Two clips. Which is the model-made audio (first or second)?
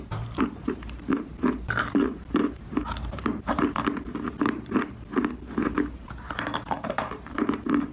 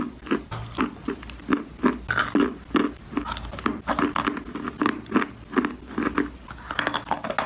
first